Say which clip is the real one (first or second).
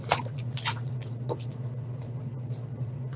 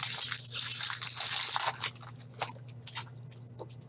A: second